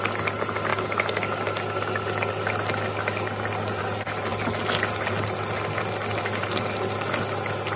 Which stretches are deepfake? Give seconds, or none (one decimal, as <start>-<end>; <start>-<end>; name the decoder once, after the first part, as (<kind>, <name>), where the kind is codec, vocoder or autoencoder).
none